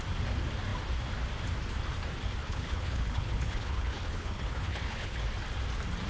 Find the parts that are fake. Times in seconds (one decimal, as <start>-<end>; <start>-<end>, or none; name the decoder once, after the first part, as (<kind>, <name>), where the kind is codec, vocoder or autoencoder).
2.4-5.2 (codec, HILCodec)